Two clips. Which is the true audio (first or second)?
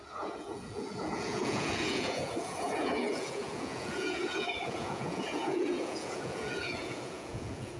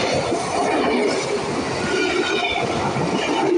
second